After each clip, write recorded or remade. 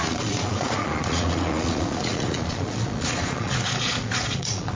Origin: remade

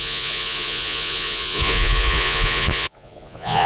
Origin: remade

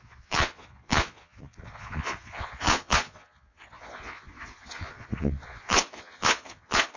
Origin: remade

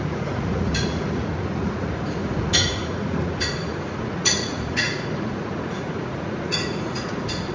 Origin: remade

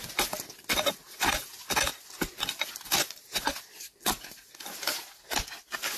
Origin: recorded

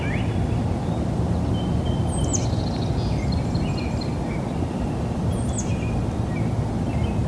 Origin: recorded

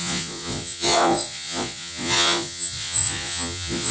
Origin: remade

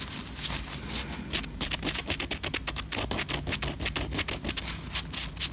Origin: recorded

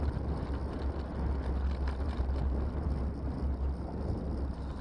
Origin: recorded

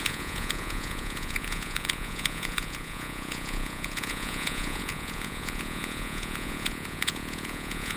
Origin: remade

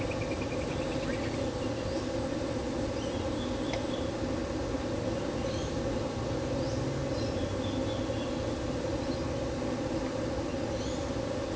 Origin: recorded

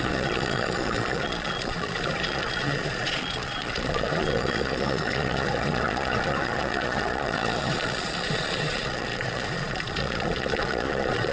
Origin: remade